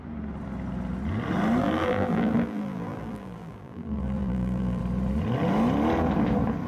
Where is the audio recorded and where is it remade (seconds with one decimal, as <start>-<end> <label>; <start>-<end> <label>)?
0.0-1.6 recorded; 1.6-4.8 remade; 4.8-6.7 recorded

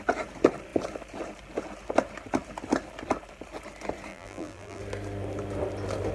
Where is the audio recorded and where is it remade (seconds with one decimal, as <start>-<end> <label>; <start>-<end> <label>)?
0.0-4.1 recorded; 4.1-4.8 remade; 4.8-6.1 recorded

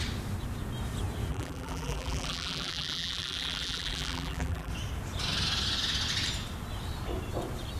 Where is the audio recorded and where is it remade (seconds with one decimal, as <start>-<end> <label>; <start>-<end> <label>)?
0.0-1.3 recorded; 1.3-4.7 remade; 4.7-7.8 recorded